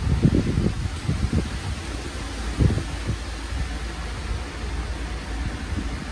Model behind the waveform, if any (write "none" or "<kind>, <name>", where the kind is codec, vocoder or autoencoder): none